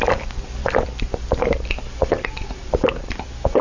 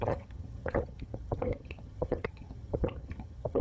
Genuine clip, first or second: first